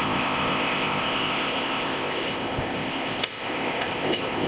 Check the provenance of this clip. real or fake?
fake